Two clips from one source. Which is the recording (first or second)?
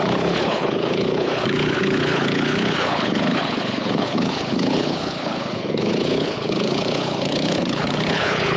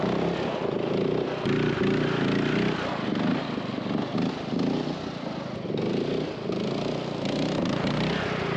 second